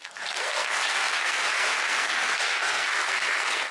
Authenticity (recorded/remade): remade